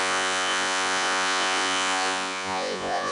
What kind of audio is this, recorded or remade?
remade